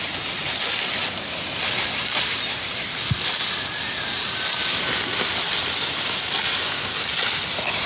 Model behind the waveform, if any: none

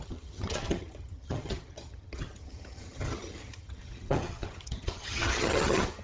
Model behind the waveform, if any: vocoder, HiFi-GAN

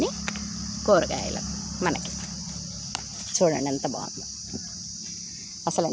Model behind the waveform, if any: none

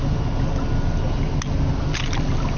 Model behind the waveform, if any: none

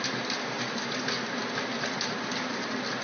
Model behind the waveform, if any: none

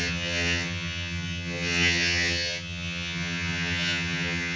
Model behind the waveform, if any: vocoder, HiFi-GAN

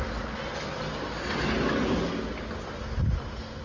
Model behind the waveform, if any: none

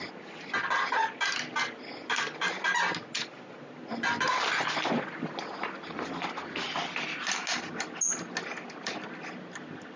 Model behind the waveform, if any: none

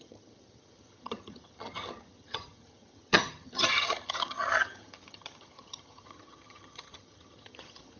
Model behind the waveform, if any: vocoder, HiFi-GAN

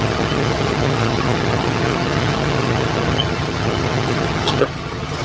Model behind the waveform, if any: vocoder, HiFi-GAN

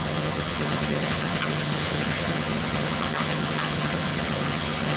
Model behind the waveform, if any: vocoder, HiFi-GAN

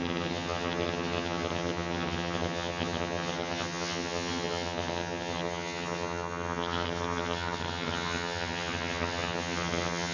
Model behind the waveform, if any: vocoder, HiFi-GAN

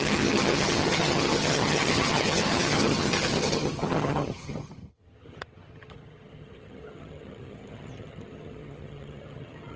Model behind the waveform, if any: vocoder, HiFi-GAN